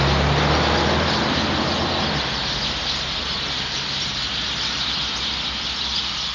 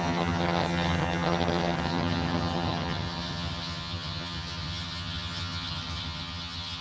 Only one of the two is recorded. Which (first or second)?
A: first